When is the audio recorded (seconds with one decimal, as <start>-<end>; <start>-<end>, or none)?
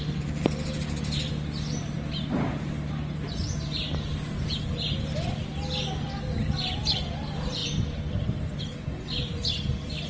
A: 0.0-10.1